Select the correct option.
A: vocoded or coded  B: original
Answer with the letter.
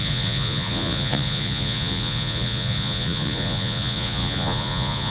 A